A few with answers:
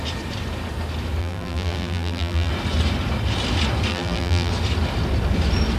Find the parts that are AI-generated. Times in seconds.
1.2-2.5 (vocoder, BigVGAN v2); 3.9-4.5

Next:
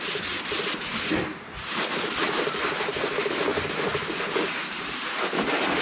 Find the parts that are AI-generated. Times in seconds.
0.0-5.8 (vocoder, BigVGAN v2)

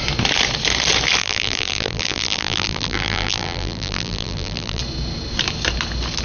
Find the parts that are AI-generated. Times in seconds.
1.2-4.8 (vocoder, BigVGAN v2)

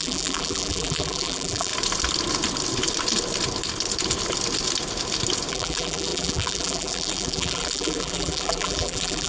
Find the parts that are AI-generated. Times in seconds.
0.0-1.7 (vocoder, BigVGAN v2); 5.5-9.3

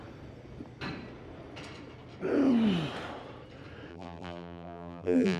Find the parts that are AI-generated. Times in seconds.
3.9-5.4 (vocoder, BigVGAN v2)